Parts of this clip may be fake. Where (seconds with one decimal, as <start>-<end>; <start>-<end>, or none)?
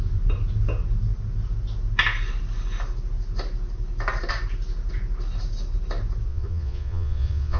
6.3-7.6